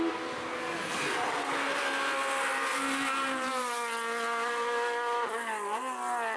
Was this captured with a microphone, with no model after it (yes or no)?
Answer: yes